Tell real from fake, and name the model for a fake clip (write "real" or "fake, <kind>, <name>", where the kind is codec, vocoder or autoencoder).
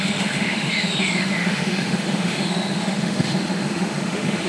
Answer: fake, autoencoder, DAC-VAE